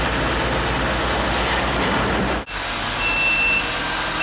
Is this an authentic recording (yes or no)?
yes